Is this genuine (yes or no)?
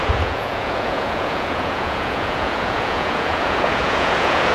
no